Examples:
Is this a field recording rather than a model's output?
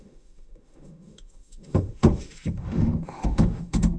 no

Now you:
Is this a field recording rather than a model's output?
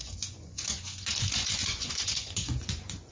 no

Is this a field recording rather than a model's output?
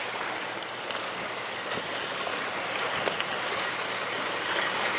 yes